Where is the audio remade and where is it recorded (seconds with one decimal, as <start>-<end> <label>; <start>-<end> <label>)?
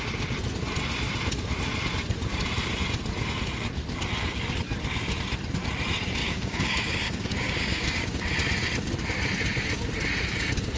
0.0-6.2 recorded; 6.2-8.2 remade; 8.2-10.8 recorded